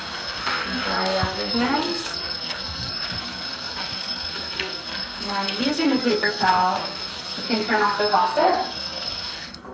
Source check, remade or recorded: remade